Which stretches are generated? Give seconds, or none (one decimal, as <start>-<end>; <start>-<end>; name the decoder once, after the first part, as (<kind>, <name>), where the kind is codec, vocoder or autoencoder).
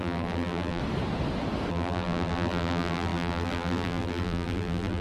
0.0-0.8 (vocoder, BigVGAN v2); 1.7-5.0